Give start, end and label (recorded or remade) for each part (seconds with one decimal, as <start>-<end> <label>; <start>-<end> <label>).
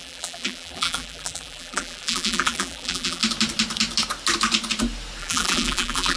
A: 0.0-3.2 remade; 3.2-5.2 recorded; 5.2-6.2 remade